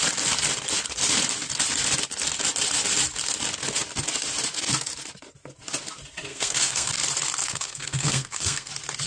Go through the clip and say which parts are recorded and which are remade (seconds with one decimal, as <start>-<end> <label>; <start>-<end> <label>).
0.0-6.3 recorded; 6.3-6.9 remade; 6.9-7.4 recorded; 7.4-8.7 remade; 8.7-9.1 recorded